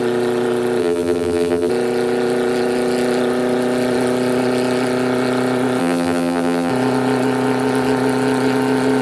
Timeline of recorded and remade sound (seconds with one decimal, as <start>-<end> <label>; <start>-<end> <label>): 0.0-0.8 recorded; 0.8-1.7 remade; 1.7-5.8 recorded; 5.8-6.7 remade; 6.7-9.0 recorded

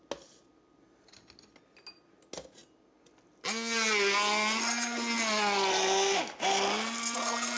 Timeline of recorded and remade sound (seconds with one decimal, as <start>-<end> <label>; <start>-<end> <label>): 0.0-7.6 recorded

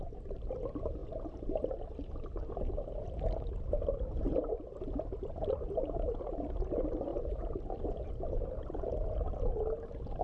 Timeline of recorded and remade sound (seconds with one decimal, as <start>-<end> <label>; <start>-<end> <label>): 0.0-7.1 recorded; 7.1-8.1 remade; 8.1-10.2 recorded

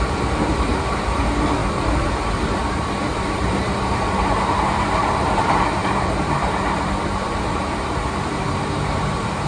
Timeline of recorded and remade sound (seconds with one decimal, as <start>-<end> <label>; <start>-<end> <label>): 0.0-9.5 remade

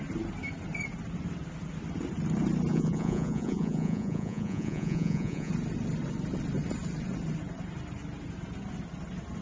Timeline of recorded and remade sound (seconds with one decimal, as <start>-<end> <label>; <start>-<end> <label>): 0.0-2.7 recorded; 2.7-5.5 remade; 5.5-9.4 recorded

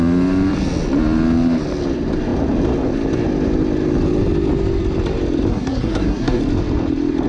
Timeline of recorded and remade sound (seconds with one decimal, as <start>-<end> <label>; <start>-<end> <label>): 0.0-5.5 recorded; 5.5-6.4 remade; 6.4-7.3 recorded